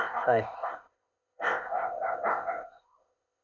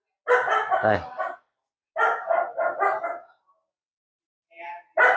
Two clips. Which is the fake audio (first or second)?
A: first